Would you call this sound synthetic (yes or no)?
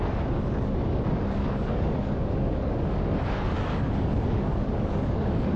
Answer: yes